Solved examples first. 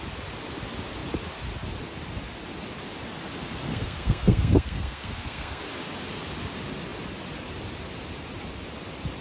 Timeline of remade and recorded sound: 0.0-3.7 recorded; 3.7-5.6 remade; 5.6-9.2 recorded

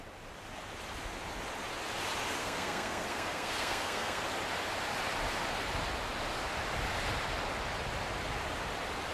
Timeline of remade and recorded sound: 0.0-2.4 recorded; 2.4-4.2 remade; 4.2-9.1 recorded

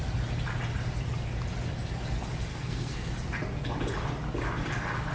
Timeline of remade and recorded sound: 0.0-2.5 recorded; 2.5-3.1 remade; 3.1-5.1 recorded

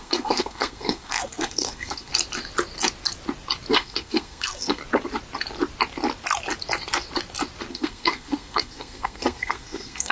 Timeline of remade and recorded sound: 0.0-2.1 remade; 2.1-3.7 recorded; 3.7-4.8 remade; 4.8-7.7 recorded; 7.7-10.1 remade